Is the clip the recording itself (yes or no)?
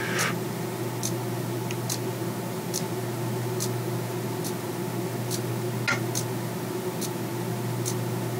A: yes